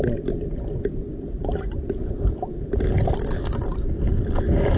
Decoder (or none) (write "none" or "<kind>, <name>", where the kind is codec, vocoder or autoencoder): none